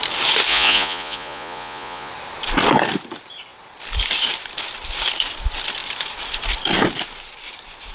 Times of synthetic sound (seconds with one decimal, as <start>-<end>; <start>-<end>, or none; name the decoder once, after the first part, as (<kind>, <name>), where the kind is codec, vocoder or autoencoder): 0.5-2.1 (vocoder, Vocos)